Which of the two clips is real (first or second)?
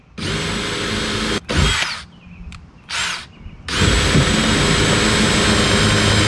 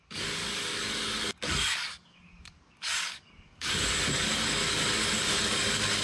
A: first